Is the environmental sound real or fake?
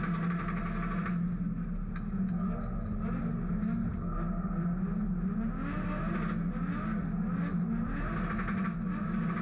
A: real